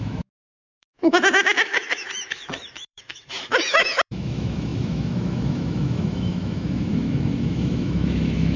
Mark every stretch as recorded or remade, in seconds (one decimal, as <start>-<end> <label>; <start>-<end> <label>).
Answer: 0.0-8.6 remade